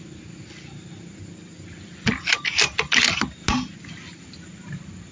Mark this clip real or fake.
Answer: real